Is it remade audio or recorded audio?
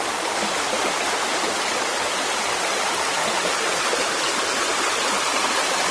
recorded